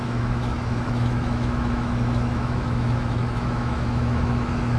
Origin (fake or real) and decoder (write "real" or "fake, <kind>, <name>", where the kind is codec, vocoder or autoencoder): fake, autoencoder, DAC-VAE